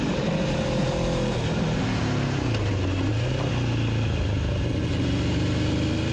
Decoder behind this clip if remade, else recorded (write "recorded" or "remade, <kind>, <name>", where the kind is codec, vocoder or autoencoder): recorded